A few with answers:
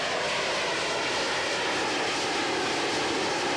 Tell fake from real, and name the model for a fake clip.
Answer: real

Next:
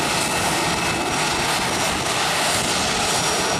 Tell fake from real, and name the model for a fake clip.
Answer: real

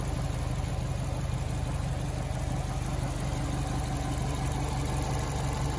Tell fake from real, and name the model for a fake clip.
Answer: real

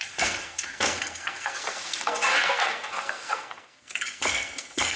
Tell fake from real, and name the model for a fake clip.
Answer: fake, codec, SNAC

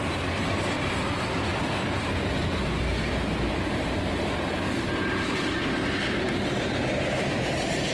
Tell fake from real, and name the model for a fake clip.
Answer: real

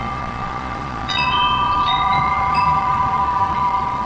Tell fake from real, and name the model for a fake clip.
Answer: fake, vocoder, Vocos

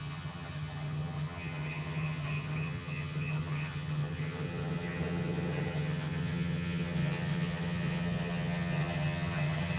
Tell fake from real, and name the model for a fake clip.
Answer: fake, vocoder, HiFi-GAN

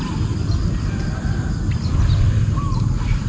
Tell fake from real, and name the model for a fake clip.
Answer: real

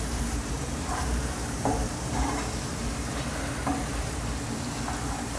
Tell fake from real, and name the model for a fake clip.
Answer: fake, vocoder, BigVGAN v2